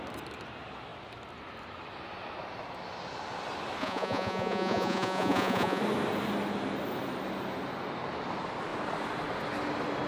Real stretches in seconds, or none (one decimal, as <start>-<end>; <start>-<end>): 0.0-3.8; 5.8-10.1